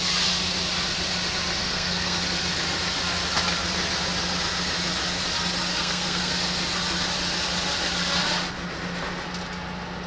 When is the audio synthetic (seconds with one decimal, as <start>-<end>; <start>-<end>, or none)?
1.6-2.2; 5.7-6.3